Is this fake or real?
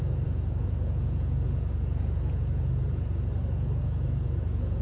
fake